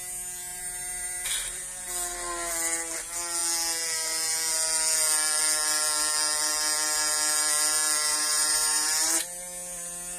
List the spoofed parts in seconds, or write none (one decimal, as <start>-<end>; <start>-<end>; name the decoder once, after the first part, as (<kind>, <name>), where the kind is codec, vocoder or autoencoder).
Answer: 0.5-1.3 (vocoder, BigVGAN v2); 8.1-9.2

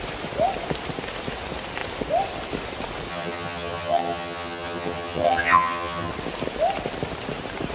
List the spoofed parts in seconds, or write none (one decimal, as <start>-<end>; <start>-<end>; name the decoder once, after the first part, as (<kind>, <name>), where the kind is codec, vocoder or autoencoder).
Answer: 3.1-6.1 (vocoder, HiFi-GAN)

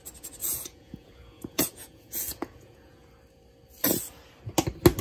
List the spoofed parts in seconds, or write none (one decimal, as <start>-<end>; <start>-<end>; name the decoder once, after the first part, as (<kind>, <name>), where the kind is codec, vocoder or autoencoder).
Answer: 0.4-3.1 (vocoder, Vocos)

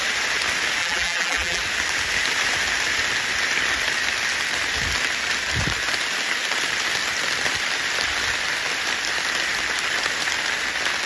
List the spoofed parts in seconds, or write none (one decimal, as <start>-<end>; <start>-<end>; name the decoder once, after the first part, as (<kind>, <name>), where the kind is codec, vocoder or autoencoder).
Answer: 0.8-1.6 (vocoder, BigVGAN v2)

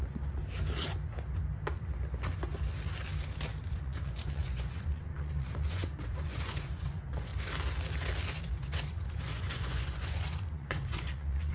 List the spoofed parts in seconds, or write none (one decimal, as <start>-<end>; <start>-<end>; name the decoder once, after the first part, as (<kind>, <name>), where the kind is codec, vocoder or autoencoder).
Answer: 0.0-0.4 (vocoder, Vocos); 3.6-7.3; 8.4-11.5

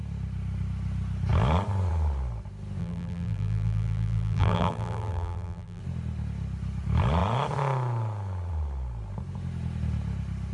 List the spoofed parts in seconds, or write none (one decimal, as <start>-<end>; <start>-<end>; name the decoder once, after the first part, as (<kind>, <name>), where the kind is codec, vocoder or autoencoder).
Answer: 2.8-5.8 (vocoder, BigVGAN v2)